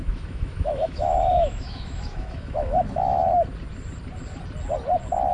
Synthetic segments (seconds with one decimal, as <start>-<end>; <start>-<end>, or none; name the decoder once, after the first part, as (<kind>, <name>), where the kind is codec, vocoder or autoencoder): 0.0-3.2 (autoencoder, DAC-VAE)